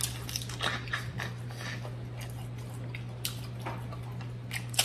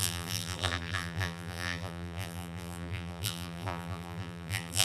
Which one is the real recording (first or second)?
first